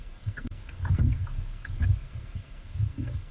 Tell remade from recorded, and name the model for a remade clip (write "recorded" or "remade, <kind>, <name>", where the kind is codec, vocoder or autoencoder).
remade, codec, SNAC